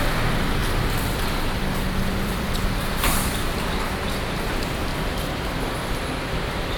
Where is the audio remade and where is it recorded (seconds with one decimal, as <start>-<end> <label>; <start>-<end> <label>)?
0.0-0.6 recorded; 0.6-3.8 remade; 3.8-4.9 recorded; 4.9-5.6 remade; 5.6-6.8 recorded